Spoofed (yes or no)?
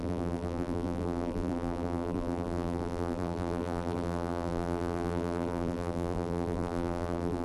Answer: yes